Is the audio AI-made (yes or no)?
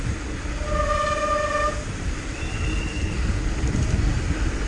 no